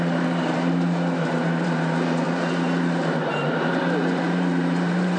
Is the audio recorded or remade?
remade